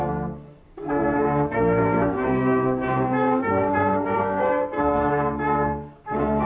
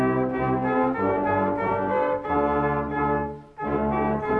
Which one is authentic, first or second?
second